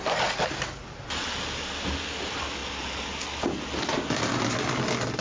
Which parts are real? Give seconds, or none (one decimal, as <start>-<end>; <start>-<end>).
0.0-5.2